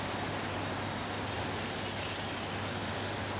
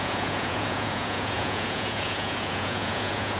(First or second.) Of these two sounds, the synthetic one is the second